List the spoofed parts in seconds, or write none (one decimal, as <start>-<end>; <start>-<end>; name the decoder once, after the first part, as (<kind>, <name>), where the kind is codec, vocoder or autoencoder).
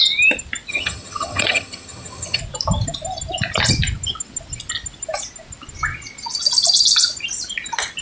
0.7-2.4 (vocoder, HiFi-GAN)